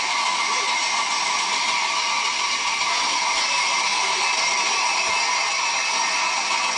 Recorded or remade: recorded